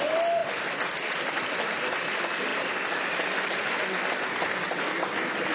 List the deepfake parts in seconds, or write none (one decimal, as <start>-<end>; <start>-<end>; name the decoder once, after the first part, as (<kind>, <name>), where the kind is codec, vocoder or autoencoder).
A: none